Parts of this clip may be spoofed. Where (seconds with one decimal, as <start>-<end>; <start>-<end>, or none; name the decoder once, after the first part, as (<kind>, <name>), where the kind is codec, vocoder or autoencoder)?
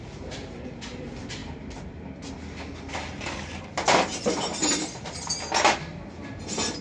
none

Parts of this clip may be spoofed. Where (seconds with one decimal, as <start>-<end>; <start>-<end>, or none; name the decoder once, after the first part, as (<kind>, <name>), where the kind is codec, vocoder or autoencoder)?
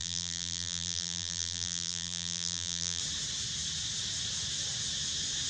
0.0-3.0 (vocoder, BigVGAN v2)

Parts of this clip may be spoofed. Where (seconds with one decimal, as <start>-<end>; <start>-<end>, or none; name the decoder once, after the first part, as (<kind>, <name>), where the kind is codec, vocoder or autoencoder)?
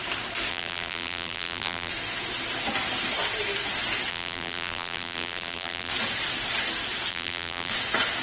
0.5-1.9 (vocoder, BigVGAN v2); 4.1-5.9; 7.1-7.7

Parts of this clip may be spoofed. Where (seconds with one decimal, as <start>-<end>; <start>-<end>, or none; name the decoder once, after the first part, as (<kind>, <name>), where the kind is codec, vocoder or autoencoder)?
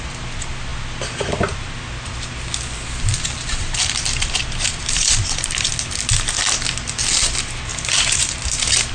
3.3-5.7 (vocoder, BigVGAN v2); 7.7-8.4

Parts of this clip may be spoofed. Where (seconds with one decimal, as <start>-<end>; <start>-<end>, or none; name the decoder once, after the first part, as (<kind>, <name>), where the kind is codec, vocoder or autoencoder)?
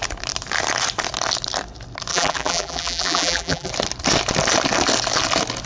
2.1-3.7 (vocoder, BigVGAN v2)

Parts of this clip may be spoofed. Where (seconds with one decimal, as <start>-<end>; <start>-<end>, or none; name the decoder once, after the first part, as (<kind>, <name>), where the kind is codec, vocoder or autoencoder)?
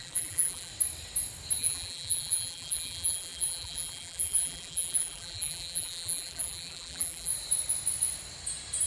0.0-0.7 (vocoder, BigVGAN v2); 1.6-7.3